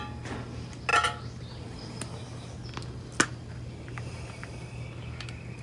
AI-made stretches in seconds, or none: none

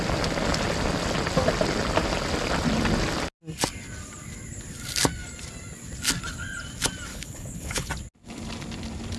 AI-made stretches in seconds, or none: 7.1-7.9 (codec, HILCodec)

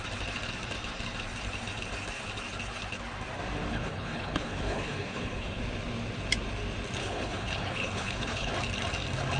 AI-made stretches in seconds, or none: 3.7-5.6 (codec, HILCodec); 7.0-8.5

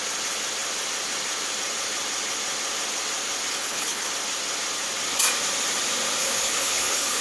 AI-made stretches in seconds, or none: 3.5-4.1 (codec, HILCodec); 6.2-7.2